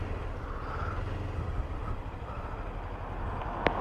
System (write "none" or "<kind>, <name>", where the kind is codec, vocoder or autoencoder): none